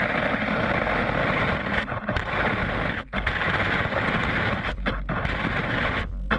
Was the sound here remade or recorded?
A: recorded